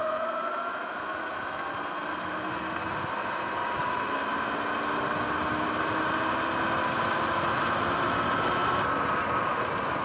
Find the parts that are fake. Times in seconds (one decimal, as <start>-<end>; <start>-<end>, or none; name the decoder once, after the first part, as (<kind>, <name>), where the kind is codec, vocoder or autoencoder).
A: none